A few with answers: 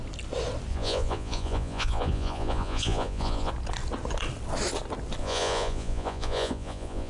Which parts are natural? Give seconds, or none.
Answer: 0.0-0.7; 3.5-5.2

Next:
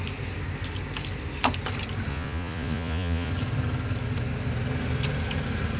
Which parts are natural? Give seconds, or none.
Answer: 0.0-2.1; 3.3-5.8